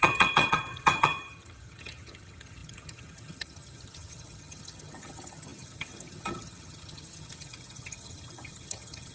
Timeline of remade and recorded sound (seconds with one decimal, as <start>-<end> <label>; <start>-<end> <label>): 0.0-9.1 remade